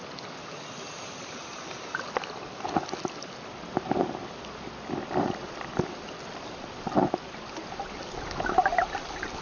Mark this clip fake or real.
real